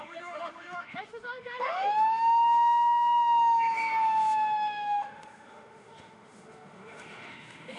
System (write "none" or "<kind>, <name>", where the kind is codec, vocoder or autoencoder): autoencoder, DAC-VAE